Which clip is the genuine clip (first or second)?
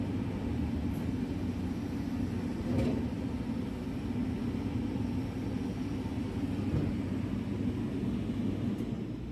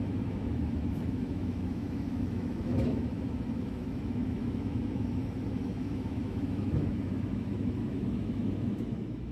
first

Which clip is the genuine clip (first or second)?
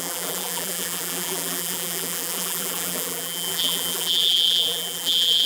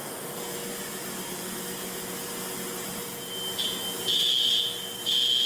second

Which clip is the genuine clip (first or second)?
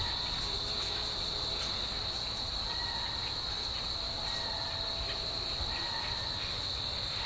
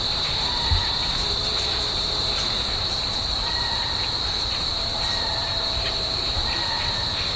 first